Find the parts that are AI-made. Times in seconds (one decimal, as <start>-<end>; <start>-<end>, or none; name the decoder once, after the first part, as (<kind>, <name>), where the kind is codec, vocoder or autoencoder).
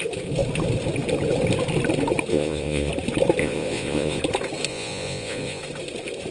2.3-2.9 (vocoder, Vocos); 3.4-4.2; 4.7-5.6